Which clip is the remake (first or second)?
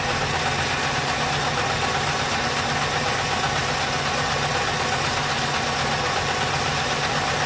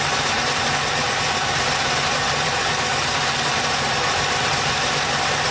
second